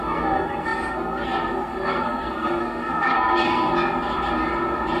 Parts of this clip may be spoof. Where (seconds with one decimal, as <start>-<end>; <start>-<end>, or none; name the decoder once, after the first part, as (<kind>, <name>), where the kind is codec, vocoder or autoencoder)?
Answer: 0.0-3.7 (codec, SNAC)